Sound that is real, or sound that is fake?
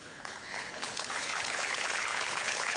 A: fake